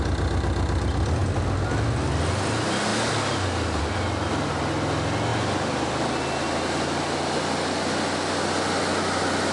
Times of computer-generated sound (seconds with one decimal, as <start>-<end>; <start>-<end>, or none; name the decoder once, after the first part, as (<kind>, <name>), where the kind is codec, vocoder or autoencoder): none